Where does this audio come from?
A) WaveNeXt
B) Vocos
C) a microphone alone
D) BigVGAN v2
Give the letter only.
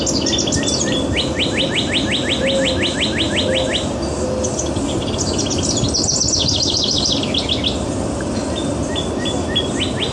C